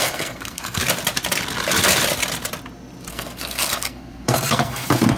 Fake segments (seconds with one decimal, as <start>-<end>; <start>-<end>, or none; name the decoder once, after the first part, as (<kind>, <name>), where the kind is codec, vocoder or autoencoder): 0.0-0.8 (codec, SNAC); 3.1-5.2